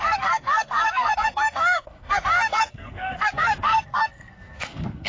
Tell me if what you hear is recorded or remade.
remade